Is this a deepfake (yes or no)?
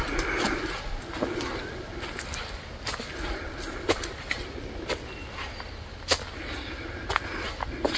no